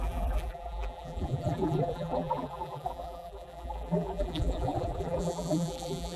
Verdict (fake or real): fake